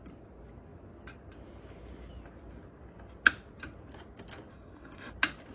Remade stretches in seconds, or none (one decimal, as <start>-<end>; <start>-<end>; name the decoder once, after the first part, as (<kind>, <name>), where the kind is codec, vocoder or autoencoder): 4.5-5.1 (codec, HILCodec)